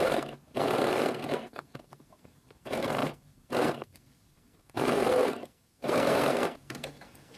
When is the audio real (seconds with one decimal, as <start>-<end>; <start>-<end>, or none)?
none